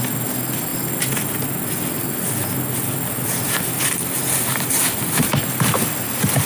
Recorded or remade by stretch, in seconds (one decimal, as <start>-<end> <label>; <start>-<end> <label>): 0.0-6.5 recorded